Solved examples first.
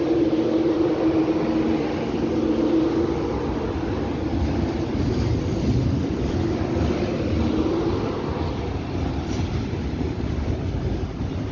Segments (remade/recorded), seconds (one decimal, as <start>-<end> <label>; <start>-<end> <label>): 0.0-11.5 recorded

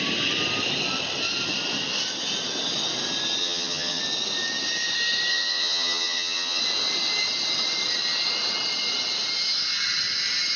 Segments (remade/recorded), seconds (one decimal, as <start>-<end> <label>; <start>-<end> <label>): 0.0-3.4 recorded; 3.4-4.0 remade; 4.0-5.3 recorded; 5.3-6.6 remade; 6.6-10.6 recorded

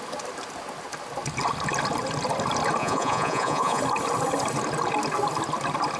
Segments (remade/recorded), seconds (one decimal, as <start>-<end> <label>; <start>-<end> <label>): 0.0-2.8 recorded; 2.8-3.8 remade; 3.8-6.0 recorded